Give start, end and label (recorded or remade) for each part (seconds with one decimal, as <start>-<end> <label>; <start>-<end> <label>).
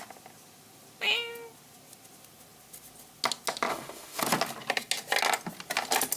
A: 0.0-3.7 recorded; 3.7-4.2 remade; 4.2-6.2 recorded